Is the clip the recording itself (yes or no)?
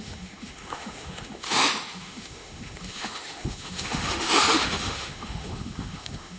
no